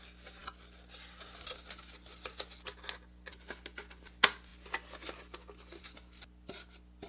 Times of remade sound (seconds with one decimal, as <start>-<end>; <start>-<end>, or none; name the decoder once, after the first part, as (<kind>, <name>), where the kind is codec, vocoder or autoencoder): none